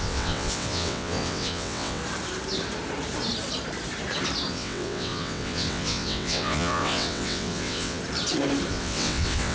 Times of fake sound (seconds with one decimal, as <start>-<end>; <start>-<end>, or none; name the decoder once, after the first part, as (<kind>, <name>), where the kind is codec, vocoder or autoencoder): 0.0-2.0 (vocoder, WaveNeXt); 4.5-8.0; 8.7-9.5